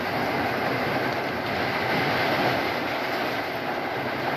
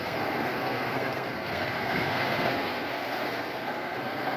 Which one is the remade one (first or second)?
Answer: second